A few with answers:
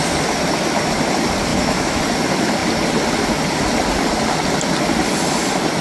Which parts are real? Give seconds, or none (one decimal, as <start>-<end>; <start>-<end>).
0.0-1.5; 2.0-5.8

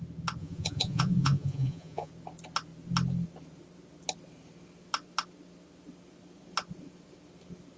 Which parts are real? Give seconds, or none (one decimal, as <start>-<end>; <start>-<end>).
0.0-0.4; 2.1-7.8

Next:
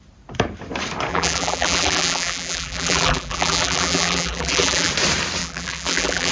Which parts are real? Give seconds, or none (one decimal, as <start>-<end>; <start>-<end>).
0.0-1.1; 4.9-5.4

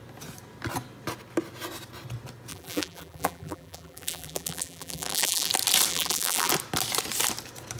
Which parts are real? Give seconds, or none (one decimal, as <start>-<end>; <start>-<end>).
0.0-2.5; 5.5-5.9; 6.5-7.8

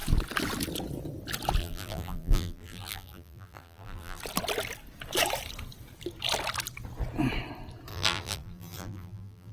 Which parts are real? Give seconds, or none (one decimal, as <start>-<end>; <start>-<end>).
0.0-1.6; 4.2-7.9